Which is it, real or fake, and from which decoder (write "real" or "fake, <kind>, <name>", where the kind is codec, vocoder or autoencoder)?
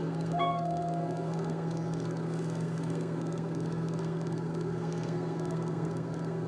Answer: fake, codec, SNAC